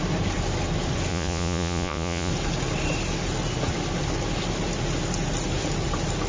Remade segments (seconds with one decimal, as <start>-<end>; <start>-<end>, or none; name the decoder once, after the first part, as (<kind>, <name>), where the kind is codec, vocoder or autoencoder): 1.1-2.3 (vocoder, Vocos)